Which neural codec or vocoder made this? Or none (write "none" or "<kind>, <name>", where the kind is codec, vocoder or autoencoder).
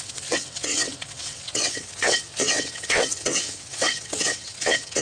vocoder, WaveNeXt